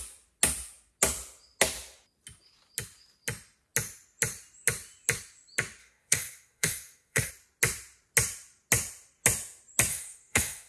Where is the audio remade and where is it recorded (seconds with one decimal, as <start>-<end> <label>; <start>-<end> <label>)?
0.0-5.8 recorded; 5.8-7.3 remade; 7.3-9.9 recorded; 9.9-10.7 remade